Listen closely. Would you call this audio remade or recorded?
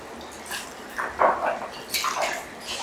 recorded